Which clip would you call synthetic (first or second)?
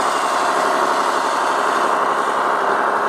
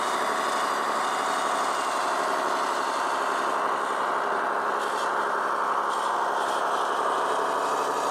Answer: first